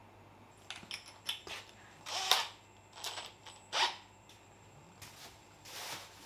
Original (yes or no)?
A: yes